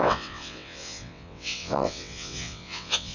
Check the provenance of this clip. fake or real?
fake